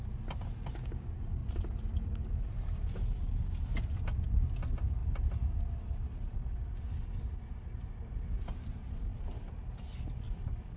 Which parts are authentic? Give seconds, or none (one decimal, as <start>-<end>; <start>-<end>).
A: 0.0-1.4; 2.9-10.8